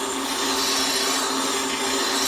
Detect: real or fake real